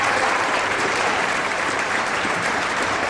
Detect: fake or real fake